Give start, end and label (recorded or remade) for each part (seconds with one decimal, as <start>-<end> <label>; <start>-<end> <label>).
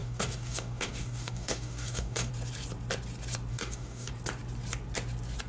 0.0-2.3 remade; 2.3-3.5 recorded; 3.5-4.1 remade; 4.1-5.5 recorded